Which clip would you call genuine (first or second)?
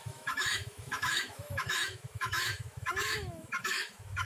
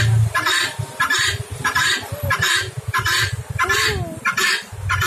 second